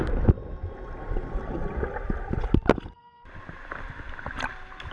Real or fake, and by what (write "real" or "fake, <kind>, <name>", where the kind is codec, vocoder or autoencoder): real